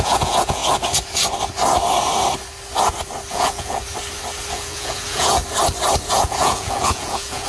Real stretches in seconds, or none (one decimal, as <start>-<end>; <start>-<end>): 0.6-3.3; 3.8-4.5; 5.4-6.1

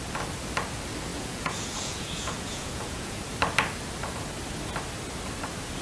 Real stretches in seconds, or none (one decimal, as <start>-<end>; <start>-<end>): 0.0-1.1; 3.2-5.8